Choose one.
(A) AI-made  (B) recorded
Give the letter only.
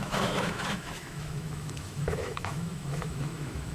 A